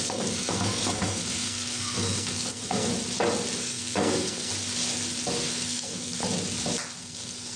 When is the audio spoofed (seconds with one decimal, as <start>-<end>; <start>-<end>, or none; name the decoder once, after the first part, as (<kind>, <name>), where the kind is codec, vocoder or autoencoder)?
0.0-2.9 (codec, SNAC); 3.6-4.5; 5.5-6.2; 7.0-7.6